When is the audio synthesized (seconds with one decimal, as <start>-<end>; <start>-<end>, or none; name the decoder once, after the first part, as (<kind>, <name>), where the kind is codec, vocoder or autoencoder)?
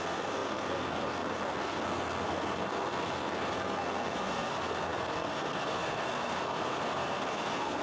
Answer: 0.0-7.8 (codec, SNAC)